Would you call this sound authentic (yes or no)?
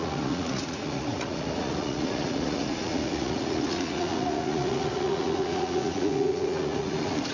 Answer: no